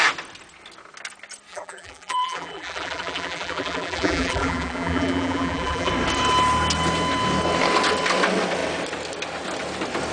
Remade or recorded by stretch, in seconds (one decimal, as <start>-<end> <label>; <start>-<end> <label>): 0.0-1.5 recorded; 1.5-5.9 remade; 5.9-10.1 recorded